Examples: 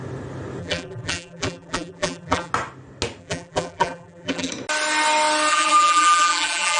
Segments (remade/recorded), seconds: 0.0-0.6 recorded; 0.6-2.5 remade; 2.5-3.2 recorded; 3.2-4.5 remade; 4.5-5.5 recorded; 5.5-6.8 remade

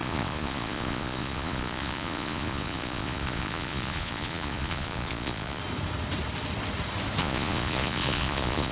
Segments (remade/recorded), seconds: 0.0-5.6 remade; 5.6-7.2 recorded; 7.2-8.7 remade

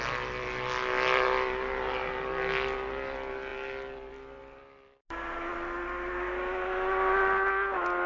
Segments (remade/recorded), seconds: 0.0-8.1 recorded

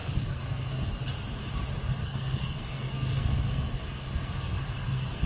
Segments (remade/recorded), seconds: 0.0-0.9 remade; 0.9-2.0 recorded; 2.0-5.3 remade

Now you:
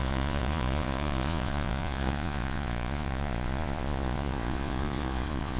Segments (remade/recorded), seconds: 0.0-5.6 remade

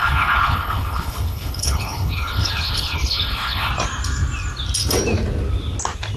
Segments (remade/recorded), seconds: 0.0-3.7 remade; 3.7-6.2 recorded

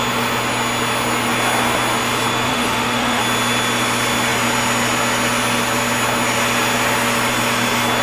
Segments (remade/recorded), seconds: 0.0-2.5 recorded; 2.5-3.2 remade; 3.2-8.0 recorded

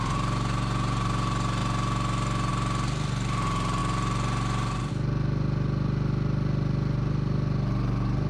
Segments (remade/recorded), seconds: 0.0-8.3 recorded